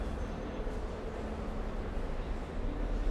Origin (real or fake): real